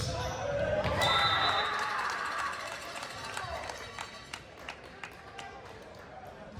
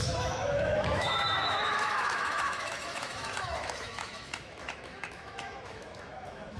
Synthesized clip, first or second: second